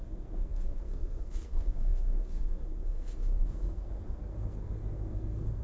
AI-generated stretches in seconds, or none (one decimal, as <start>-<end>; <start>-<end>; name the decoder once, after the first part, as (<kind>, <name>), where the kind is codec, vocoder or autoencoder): 0.0-5.6 (codec, SNAC)